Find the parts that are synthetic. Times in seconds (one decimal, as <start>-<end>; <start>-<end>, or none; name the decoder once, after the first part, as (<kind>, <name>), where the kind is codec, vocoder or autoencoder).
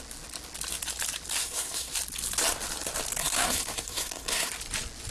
1.4-1.9 (codec, SNAC); 3.2-4.5